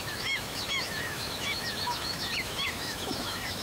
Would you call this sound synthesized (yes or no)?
yes